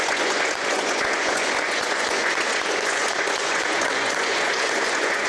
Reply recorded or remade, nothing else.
remade